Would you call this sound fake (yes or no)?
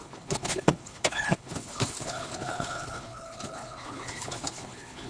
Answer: yes